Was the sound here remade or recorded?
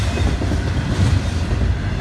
recorded